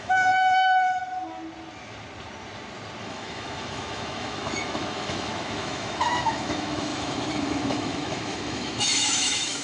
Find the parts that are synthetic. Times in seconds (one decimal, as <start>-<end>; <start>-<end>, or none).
0.0-1.0; 3.0-9.6